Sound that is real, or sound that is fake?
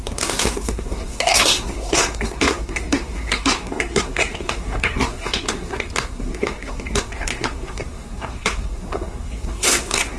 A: fake